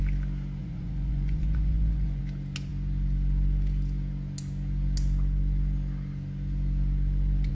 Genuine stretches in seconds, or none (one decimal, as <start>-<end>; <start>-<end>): 0.0-0.6; 2.2-7.5